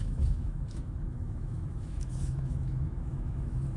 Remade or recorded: remade